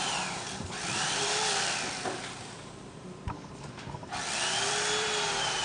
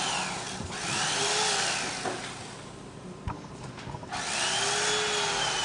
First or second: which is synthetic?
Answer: first